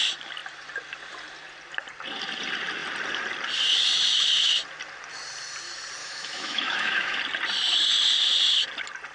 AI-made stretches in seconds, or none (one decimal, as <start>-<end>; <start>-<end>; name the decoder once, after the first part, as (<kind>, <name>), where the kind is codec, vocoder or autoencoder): 6.0-7.2 (autoencoder, DAC-VAE)